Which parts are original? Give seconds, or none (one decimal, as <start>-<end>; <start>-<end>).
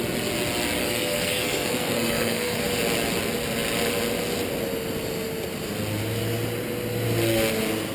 0.0-0.8; 2.6-7.9